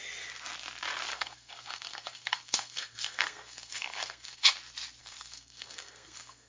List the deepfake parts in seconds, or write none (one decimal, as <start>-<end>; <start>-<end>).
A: 1.1-4.5; 5.0-6.5